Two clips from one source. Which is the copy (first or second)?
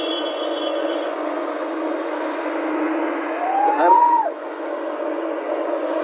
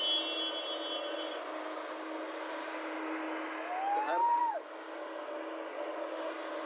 first